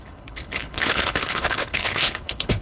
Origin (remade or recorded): remade